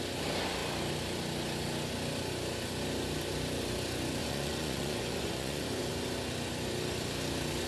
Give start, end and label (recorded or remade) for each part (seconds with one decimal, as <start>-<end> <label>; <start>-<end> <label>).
0.0-4.2 recorded; 4.2-5.9 remade; 5.9-7.7 recorded